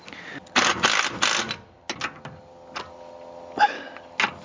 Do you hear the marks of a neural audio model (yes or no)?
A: no